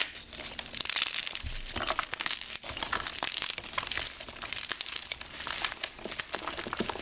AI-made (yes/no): no